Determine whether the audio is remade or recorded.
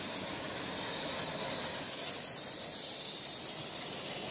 recorded